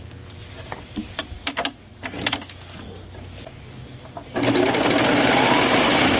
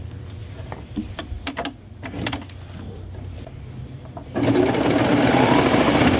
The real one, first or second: first